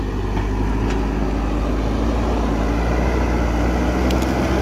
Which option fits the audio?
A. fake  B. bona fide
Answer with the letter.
B